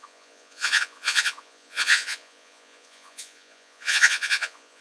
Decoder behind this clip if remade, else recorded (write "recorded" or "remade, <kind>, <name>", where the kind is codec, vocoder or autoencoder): remade, vocoder, Vocos